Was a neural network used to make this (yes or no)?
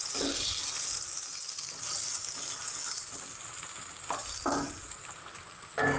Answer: no